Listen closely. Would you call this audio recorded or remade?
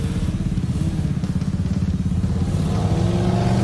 recorded